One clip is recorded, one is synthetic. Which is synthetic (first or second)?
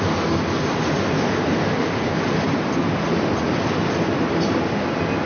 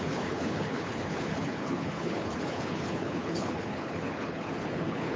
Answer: second